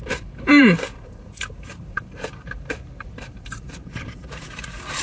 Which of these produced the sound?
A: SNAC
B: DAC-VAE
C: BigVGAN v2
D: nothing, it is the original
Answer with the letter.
C